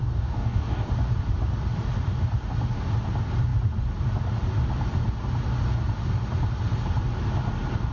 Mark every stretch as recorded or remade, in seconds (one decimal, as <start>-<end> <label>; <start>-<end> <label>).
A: 0.0-0.9 remade; 0.9-7.9 recorded